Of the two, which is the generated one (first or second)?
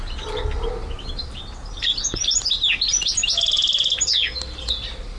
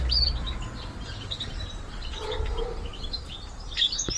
second